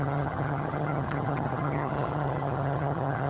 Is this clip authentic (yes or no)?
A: no